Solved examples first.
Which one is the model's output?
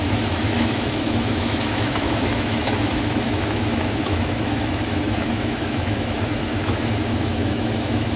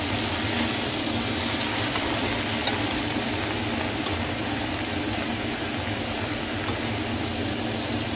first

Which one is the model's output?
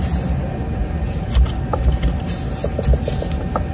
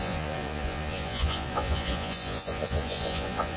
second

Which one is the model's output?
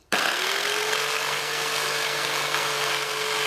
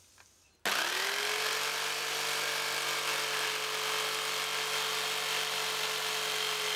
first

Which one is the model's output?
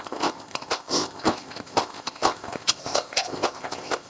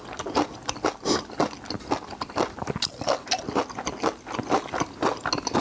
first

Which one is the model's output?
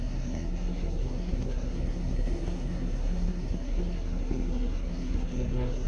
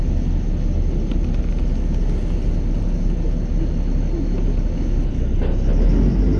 first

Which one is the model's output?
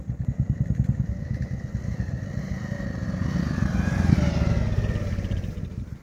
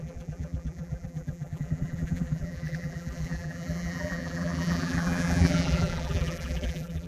second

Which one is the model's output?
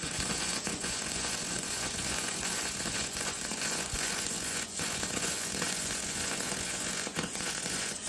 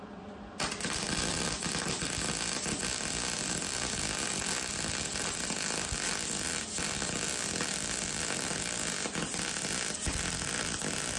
first